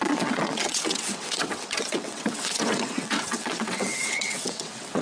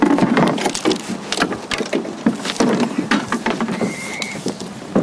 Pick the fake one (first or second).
first